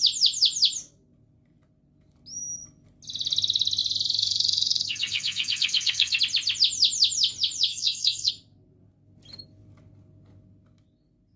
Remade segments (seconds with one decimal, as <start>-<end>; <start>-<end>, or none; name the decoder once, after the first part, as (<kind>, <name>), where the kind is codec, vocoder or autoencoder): 4.2-6.2 (codec, SNAC); 7.7-8.3